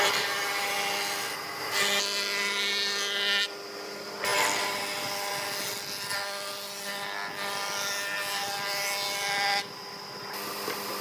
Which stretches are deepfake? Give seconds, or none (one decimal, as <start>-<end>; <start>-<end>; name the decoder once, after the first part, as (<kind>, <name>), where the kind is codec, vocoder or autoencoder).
none